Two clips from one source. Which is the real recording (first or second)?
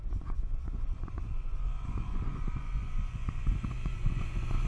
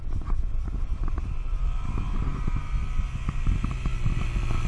second